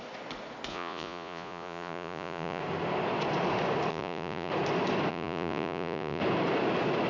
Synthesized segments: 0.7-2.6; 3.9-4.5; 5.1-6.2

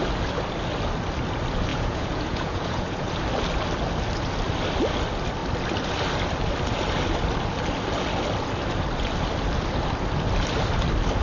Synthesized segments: 1.7-3.1

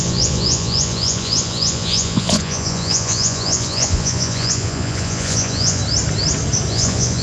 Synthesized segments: 0.0-5.8; 6.7-7.2

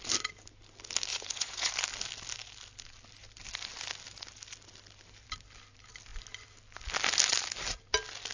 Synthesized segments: 1.1-1.7

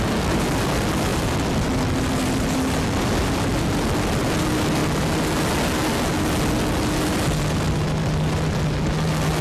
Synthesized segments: none

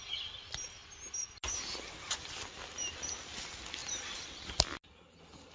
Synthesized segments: none